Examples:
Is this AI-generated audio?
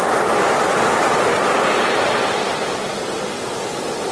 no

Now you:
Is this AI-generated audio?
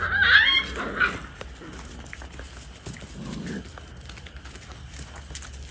no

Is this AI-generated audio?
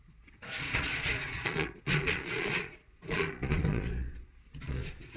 yes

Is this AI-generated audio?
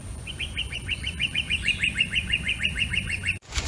yes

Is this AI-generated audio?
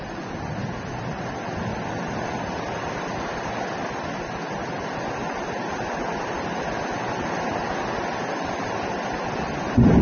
no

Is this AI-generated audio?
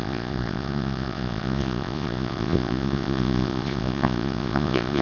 yes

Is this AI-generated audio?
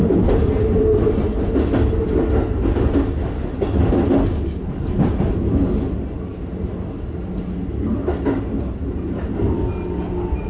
no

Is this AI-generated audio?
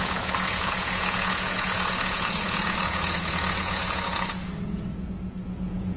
yes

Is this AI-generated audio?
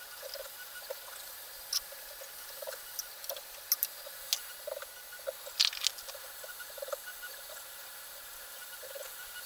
no